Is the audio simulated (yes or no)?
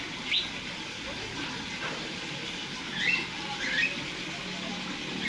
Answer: no